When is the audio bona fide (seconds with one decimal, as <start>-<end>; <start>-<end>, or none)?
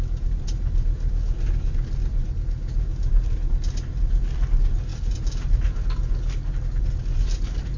0.0-7.8